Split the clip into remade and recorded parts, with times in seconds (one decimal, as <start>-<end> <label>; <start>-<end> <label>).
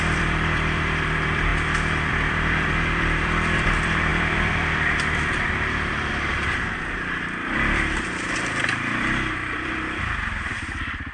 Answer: 0.0-1.5 remade; 1.5-2.1 recorded; 2.1-11.1 remade